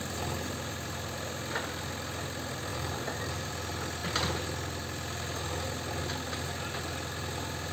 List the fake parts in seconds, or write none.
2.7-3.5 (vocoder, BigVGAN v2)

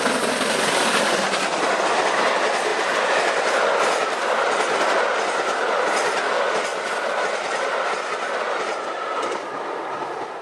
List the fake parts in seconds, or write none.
2.7-3.5 (vocoder, BigVGAN v2); 6.7-8.4

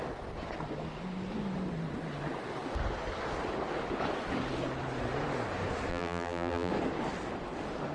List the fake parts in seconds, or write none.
5.9-6.7 (vocoder, BigVGAN v2)

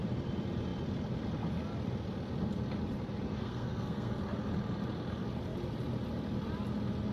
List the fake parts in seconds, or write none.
3.3-4.1 (codec, SNAC)